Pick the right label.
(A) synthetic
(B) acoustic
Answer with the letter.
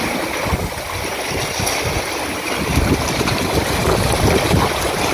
B